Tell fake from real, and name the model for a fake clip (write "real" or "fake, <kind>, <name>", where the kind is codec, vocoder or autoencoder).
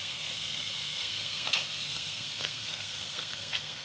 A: fake, codec, SNAC